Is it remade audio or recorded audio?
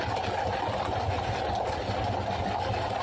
recorded